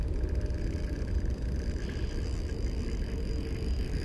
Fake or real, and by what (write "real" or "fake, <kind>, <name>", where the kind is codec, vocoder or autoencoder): real